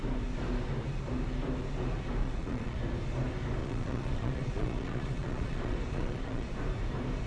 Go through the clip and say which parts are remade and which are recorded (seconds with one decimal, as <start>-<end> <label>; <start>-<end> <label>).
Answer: 0.0-2.2 recorded; 2.2-2.8 remade; 2.8-3.6 recorded; 3.6-6.5 remade; 6.5-7.3 recorded